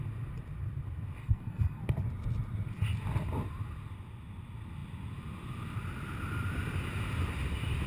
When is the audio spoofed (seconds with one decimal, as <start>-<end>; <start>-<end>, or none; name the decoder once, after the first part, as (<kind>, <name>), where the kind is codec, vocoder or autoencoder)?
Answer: 1.2-1.8 (codec, SNAC)